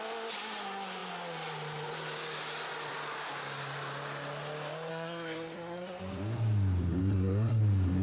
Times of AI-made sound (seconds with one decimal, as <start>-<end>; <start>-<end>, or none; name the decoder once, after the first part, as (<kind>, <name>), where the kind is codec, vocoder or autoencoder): 4.9-6.0 (codec, SNAC); 7.0-7.6